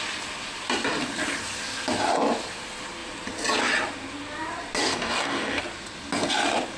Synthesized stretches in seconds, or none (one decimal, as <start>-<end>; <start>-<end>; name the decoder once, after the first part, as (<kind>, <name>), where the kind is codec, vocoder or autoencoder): 4.8-5.6 (codec, DAC)